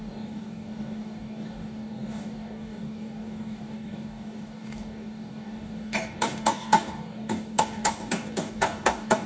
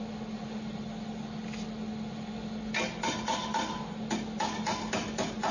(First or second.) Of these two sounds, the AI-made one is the first